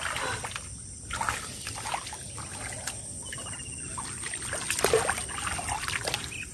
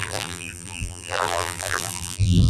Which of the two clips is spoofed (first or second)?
second